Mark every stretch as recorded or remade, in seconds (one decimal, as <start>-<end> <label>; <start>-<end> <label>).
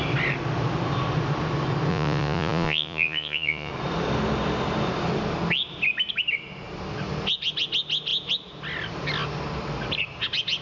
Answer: 0.0-1.9 recorded; 1.9-3.7 remade; 3.7-10.6 recorded